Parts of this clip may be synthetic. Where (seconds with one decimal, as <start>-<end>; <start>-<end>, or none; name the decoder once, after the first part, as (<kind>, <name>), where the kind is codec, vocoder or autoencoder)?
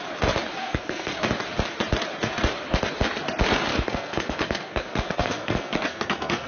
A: 0.6-1.1 (codec, SNAC); 3.7-6.5